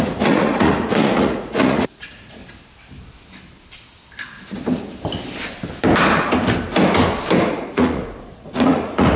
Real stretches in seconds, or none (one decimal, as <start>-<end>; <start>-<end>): 2.4-7.5